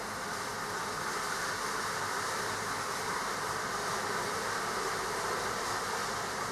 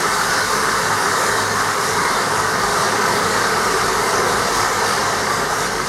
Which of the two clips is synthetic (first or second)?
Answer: second